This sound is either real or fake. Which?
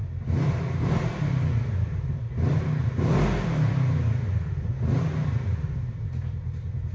real